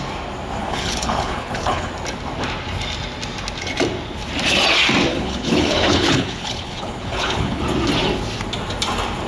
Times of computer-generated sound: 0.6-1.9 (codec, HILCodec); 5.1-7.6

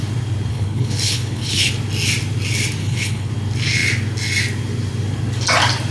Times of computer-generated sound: 0.5-1.7 (codec, HILCodec); 2.8-3.3

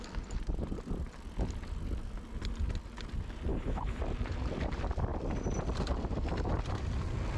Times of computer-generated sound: 3.5-4.0 (codec, HILCodec)